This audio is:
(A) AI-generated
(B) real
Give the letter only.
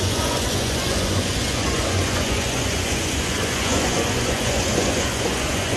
A